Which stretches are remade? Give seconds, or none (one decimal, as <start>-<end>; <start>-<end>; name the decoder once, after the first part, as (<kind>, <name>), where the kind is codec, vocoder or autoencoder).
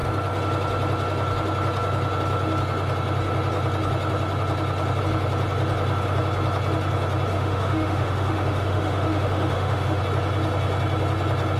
7.3-10.0 (autoencoder, DAC-VAE)